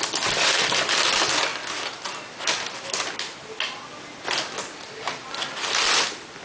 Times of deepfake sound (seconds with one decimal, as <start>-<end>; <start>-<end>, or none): none

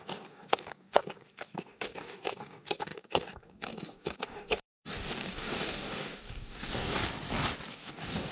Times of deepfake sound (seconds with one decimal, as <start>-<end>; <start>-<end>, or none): 0.0-7.0; 7.7-8.3

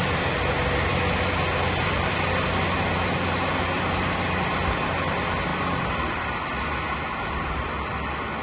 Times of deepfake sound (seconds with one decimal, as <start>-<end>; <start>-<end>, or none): none

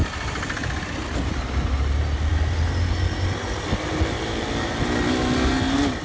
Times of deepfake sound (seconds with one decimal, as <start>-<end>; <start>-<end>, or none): none

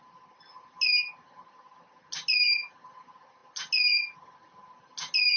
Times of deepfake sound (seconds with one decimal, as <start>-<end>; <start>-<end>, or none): none

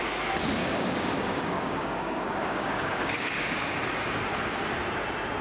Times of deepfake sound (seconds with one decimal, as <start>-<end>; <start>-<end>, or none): 0.6-3.8

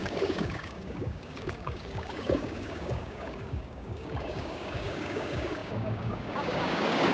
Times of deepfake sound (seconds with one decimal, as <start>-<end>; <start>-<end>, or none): 0.0-7.1